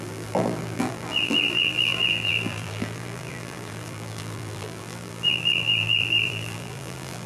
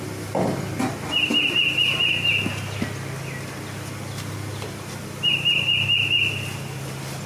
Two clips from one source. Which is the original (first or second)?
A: second